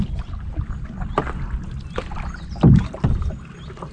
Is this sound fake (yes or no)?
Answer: no